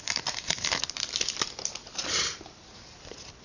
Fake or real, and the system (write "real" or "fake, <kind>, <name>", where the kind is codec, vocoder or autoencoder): real